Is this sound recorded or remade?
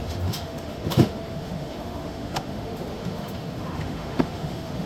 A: remade